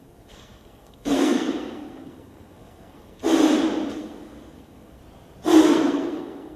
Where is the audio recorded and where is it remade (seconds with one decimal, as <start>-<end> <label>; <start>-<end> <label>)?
0.0-3.2 remade; 3.2-3.9 recorded; 3.9-5.0 remade; 5.0-5.6 recorded; 5.6-6.6 remade